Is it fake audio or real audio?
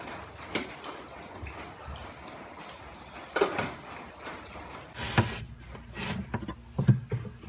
real